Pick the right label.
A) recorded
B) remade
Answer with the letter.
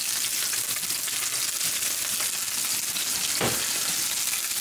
A